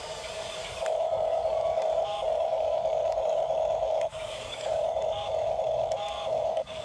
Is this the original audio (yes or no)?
no